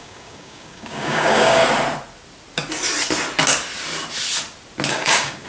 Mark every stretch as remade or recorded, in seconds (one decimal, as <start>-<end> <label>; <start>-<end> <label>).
0.0-1.6 remade; 1.6-4.9 recorded; 4.9-5.5 remade